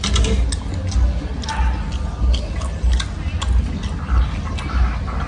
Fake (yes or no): no